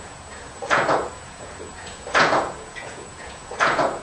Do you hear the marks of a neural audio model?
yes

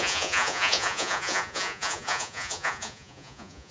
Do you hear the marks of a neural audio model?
yes